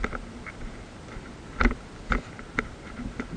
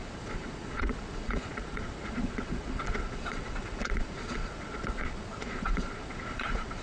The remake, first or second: second